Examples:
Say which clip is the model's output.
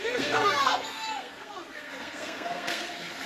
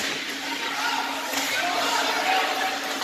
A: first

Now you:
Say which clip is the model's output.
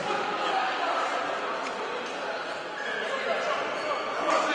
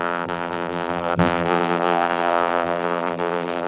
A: second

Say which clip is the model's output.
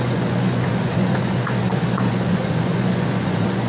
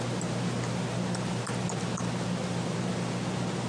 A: first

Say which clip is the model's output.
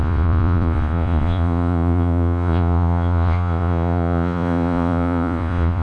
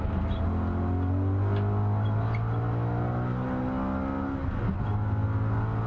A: first